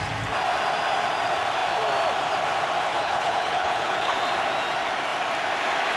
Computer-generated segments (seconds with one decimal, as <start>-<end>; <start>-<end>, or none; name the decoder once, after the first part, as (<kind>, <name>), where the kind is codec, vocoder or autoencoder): 2.9-4.2 (codec, HILCodec)